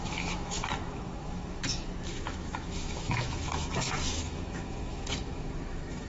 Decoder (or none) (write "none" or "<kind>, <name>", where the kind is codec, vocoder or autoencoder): autoencoder, DAC-VAE